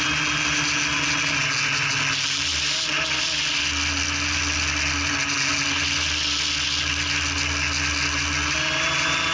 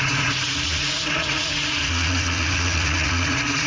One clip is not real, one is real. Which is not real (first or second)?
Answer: second